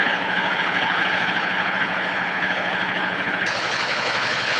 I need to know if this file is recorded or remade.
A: remade